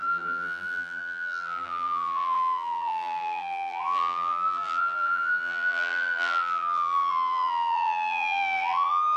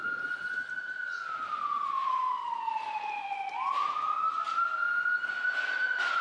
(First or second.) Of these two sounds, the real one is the second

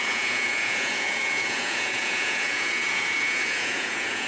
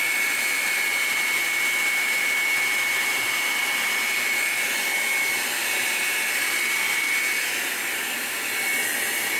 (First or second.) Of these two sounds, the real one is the second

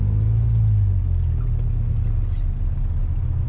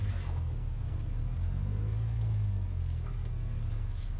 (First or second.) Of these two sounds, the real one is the first